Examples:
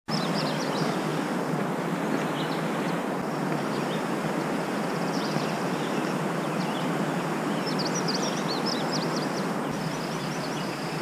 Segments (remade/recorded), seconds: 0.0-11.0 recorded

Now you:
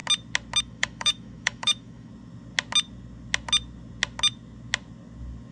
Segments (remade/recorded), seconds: 0.0-0.6 recorded; 0.6-2.1 remade; 2.1-5.5 recorded

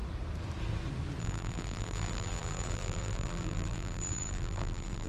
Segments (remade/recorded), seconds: 0.0-1.2 recorded; 1.2-5.1 remade